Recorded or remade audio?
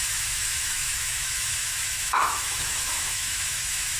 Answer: remade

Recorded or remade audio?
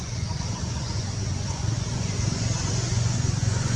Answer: remade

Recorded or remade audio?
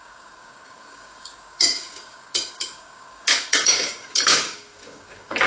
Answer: remade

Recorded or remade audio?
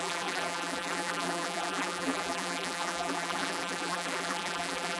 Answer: remade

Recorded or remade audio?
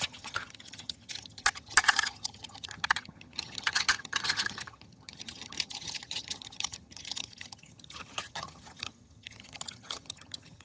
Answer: remade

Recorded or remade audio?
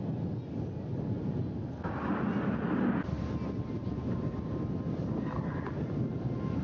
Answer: recorded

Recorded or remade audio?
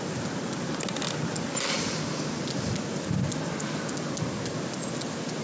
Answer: recorded